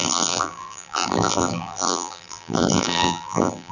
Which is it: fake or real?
fake